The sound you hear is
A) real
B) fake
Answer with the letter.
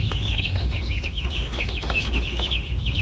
B